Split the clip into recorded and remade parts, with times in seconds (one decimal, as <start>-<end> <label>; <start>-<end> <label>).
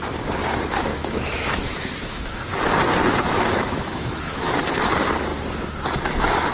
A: 0.0-0.9 recorded; 0.9-2.4 remade; 2.4-3.5 recorded; 3.5-4.6 remade; 4.6-6.5 recorded